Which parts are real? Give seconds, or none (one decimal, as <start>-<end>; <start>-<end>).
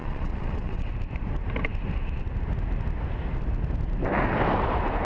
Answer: 0.9-5.0